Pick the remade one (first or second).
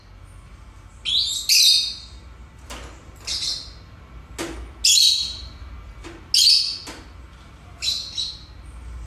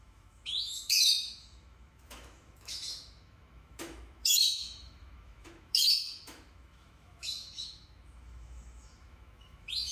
second